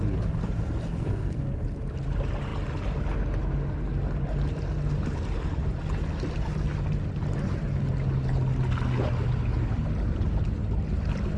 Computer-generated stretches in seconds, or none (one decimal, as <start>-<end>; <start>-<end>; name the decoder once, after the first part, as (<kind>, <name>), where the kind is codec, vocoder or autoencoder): 0.9-1.5 (codec, SNAC)